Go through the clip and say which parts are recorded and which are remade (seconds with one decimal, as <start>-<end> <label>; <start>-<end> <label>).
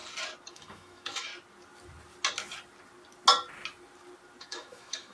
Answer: 0.0-0.5 recorded; 0.5-1.3 remade; 1.3-4.4 recorded; 4.4-5.1 remade